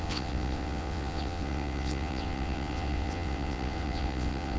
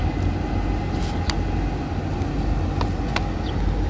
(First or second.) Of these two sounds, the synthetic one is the first